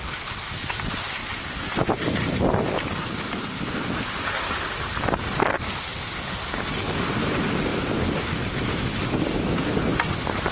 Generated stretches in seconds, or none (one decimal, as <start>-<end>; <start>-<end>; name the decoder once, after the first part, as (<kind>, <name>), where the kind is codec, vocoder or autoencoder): none